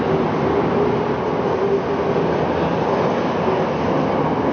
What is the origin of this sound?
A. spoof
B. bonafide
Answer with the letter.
B